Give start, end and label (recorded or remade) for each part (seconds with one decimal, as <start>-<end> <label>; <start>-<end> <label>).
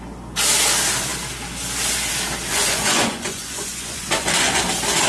0.0-2.5 recorded; 2.5-4.6 remade; 4.6-5.1 recorded